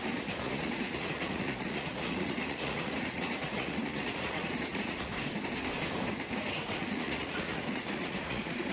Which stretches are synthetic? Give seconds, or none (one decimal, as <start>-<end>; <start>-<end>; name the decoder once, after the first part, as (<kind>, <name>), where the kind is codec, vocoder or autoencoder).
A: 0.0-5.1 (vocoder, Vocos); 6.7-8.7